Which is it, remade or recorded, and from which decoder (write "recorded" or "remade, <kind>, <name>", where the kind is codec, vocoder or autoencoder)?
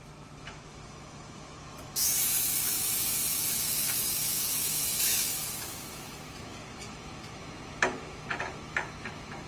remade, autoencoder, DAC-VAE